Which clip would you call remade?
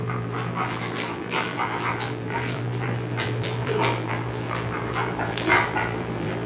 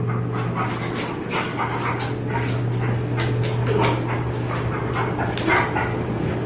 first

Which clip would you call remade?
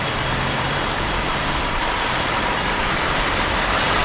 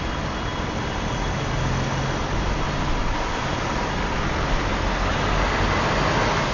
first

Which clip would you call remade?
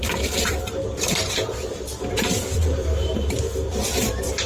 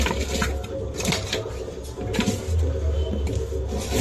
first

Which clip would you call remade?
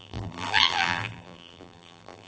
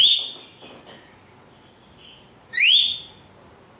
first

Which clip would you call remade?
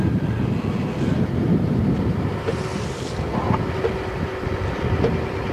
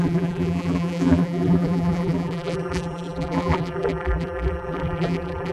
second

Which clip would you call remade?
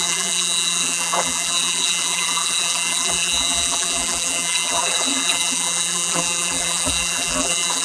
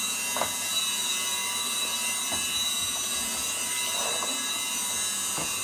first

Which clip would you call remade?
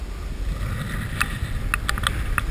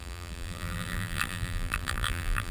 second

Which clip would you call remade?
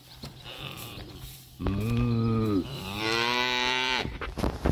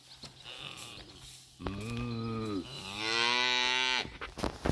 first